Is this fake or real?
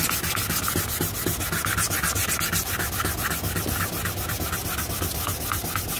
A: real